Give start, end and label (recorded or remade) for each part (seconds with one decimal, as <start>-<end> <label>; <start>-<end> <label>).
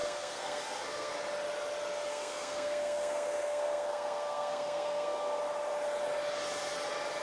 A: 0.0-1.1 remade; 1.1-2.1 recorded; 2.1-5.4 remade; 5.4-7.2 recorded